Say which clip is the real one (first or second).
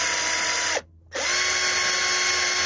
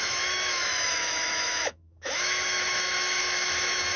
first